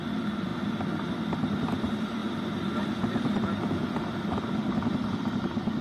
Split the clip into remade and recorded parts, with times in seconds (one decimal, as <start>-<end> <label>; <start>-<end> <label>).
0.0-0.5 remade; 0.5-1.1 recorded; 1.1-5.8 remade